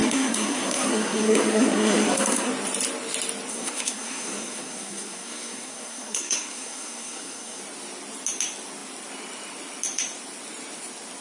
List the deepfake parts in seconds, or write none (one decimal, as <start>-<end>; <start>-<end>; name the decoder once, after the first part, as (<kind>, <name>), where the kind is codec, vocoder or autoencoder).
0.0-2.5 (codec, SNAC); 3.5-7.6